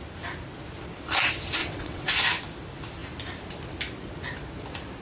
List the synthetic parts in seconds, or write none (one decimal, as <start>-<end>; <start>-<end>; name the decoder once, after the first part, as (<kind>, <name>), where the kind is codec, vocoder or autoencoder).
1.6-2.1 (vocoder, WaveNeXt)